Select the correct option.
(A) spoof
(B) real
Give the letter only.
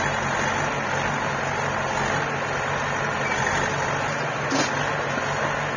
B